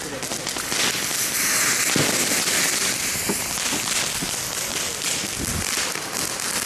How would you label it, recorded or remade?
recorded